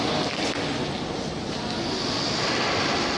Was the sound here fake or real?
real